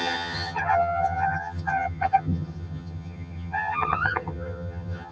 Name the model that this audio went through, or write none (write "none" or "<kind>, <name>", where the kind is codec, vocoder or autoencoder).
vocoder, HiFi-GAN